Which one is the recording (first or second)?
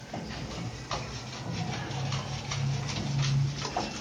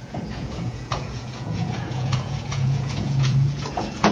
first